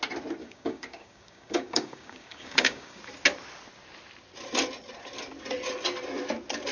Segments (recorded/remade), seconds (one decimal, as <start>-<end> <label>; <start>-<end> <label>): 0.0-0.4 recorded; 0.4-3.0 remade; 3.0-6.7 recorded